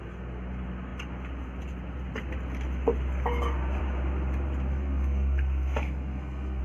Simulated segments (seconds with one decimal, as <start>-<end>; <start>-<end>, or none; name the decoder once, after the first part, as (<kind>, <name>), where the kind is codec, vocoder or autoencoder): 4.7-6.6 (codec, SNAC)